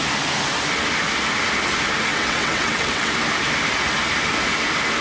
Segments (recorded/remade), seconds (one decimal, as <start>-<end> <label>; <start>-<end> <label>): 0.0-2.1 recorded; 2.1-3.1 remade; 3.1-5.0 recorded